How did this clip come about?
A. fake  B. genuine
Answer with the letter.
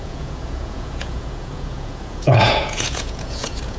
A